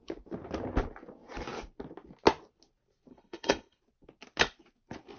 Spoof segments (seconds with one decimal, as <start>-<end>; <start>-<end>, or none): 3.1-3.8